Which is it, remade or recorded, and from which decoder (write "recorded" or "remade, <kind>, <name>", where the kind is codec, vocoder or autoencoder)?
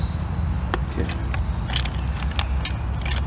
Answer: recorded